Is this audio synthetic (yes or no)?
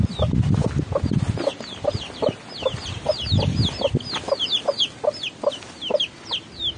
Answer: no